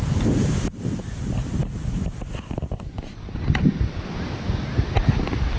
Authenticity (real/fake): real